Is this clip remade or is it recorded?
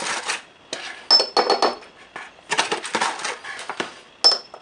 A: recorded